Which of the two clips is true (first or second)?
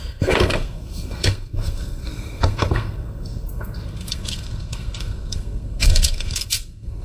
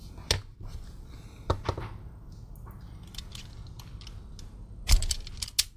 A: second